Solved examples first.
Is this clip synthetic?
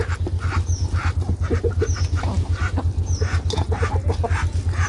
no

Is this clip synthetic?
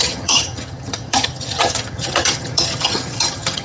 yes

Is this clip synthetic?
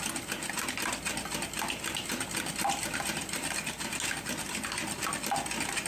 no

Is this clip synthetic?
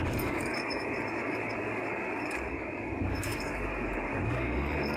yes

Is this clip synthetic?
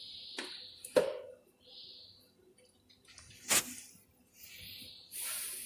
no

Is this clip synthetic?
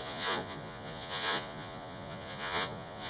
yes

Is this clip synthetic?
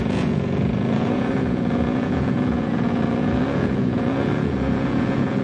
yes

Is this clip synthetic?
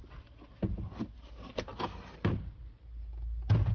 no